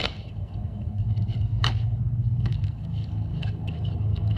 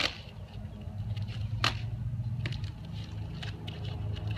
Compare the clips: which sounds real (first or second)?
second